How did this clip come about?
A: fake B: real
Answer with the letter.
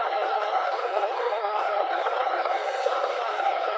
A